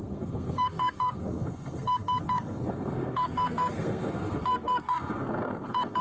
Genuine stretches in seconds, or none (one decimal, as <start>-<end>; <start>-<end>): none